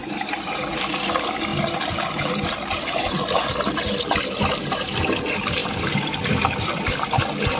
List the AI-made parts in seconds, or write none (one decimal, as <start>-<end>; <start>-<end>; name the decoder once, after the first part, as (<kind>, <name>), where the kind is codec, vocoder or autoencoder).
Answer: 5.6-7.6 (vocoder, BigVGAN v2)